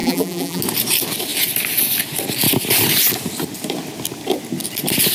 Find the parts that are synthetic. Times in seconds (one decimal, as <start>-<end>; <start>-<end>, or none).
0.0-0.6